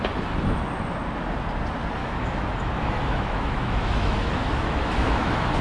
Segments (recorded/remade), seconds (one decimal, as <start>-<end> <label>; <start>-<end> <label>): 0.0-2.0 recorded; 2.0-5.6 remade